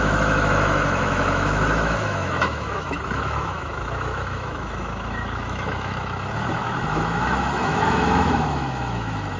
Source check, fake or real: fake